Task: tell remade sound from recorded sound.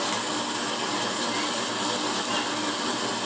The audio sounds recorded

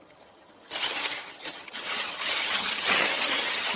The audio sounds remade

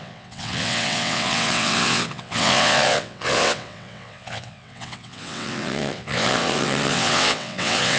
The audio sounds remade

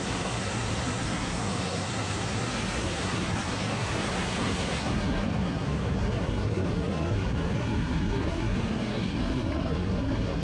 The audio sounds remade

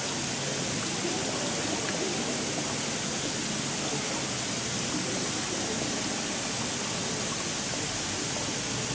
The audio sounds recorded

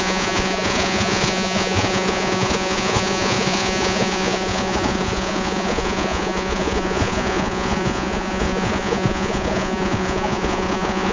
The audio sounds remade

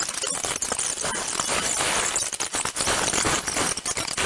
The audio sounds recorded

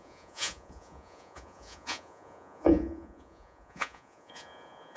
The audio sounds remade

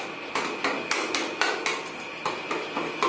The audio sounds recorded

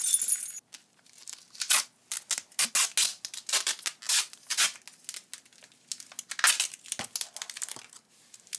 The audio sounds recorded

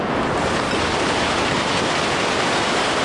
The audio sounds recorded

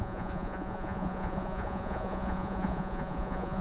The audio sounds remade